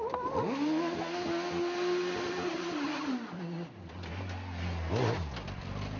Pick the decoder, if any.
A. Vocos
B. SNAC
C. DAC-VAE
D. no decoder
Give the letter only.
D